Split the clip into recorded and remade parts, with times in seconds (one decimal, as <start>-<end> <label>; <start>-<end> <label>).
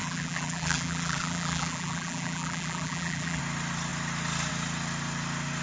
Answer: 0.0-3.4 remade; 3.4-5.6 recorded